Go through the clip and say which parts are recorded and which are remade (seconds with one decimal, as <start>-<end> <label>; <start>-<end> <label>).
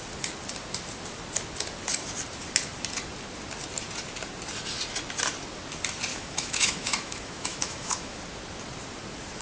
0.0-6.1 recorded; 6.1-8.2 remade; 8.2-9.4 recorded